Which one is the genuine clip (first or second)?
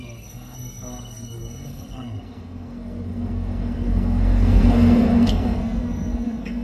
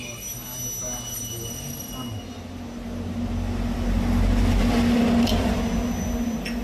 second